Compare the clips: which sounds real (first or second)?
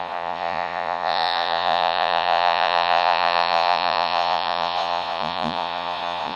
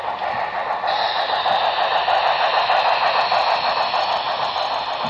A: second